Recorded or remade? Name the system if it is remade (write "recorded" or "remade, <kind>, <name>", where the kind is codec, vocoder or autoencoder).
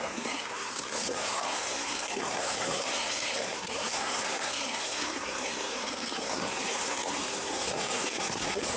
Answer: remade, codec, SNAC